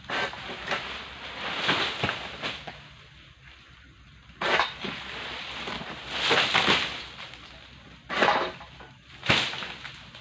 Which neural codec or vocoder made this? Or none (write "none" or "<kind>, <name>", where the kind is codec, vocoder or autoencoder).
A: none